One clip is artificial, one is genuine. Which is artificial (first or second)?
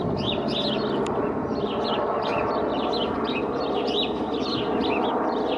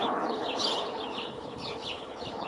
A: second